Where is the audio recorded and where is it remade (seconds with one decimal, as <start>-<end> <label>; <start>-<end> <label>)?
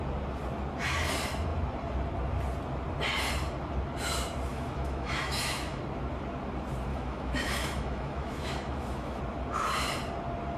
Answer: 0.0-4.5 recorded; 4.5-5.8 remade; 5.8-6.9 recorded; 6.9-9.2 remade; 9.2-10.6 recorded